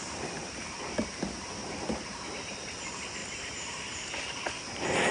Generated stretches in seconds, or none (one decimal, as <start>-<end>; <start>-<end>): 0.4-1.1; 1.6-2.4; 3.2-4.1